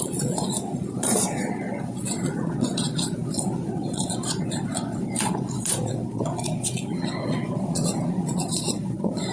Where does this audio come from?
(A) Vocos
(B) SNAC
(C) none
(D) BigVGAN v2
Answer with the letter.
A